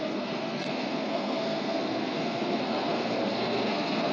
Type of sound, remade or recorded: remade